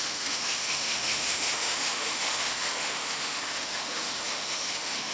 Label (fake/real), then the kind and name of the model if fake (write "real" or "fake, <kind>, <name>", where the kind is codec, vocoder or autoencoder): fake, autoencoder, DAC-VAE